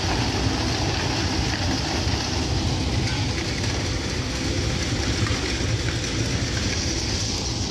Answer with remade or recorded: recorded